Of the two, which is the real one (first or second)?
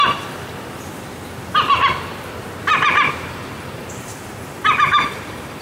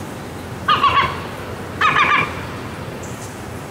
second